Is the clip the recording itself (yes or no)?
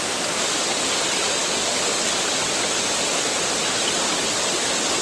yes